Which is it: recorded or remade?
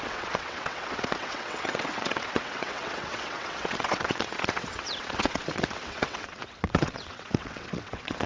remade